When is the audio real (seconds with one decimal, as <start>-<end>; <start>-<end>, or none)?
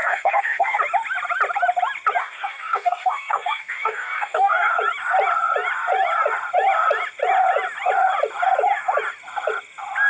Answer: 0.8-2.2; 4.7-10.1